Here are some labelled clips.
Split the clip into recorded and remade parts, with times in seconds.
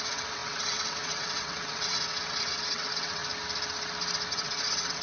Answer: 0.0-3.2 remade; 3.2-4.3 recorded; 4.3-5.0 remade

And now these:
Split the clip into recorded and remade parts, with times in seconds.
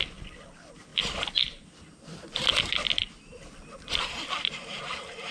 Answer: 0.0-0.9 remade; 0.9-4.0 recorded; 4.0-5.3 remade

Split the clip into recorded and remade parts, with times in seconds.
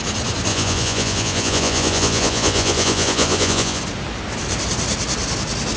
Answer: 0.0-0.5 recorded; 0.5-3.8 remade; 3.8-5.8 recorded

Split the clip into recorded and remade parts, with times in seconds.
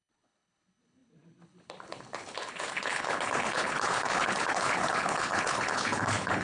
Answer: 0.0-6.4 remade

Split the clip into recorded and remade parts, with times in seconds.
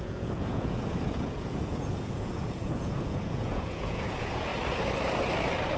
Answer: 0.0-4.5 remade; 4.5-5.8 recorded